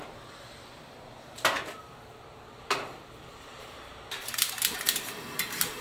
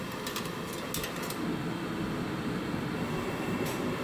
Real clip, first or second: second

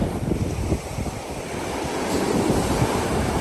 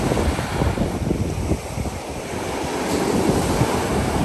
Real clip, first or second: second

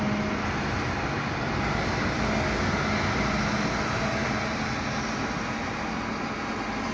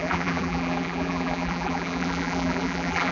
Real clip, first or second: first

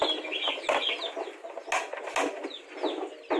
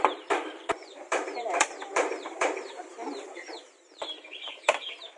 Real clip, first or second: first